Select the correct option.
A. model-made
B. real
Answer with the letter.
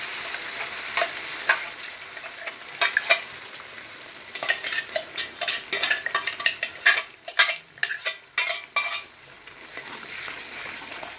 B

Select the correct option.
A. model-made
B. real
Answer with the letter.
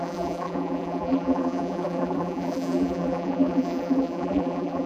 A